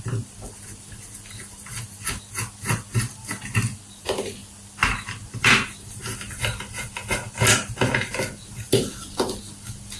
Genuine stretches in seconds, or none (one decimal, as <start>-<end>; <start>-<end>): 0.0-10.0